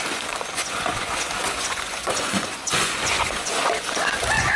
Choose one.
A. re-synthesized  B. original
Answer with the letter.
A